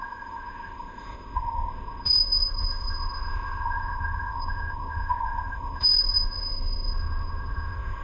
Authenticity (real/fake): fake